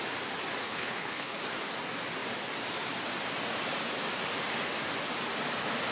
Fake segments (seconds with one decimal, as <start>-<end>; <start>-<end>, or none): 0.6-1.4